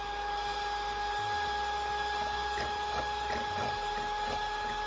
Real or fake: real